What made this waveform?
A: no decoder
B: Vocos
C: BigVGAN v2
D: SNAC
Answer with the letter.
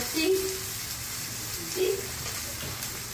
A